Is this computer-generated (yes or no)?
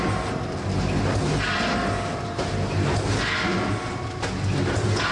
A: no